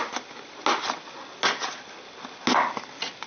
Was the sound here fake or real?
real